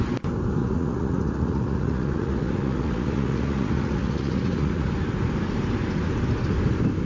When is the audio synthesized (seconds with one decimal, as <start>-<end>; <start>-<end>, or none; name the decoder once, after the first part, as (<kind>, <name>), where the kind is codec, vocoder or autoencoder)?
0.6-4.9 (vocoder, Vocos)